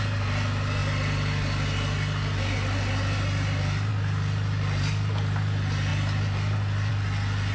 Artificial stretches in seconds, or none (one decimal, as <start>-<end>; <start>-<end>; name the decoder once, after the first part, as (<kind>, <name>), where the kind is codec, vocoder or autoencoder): none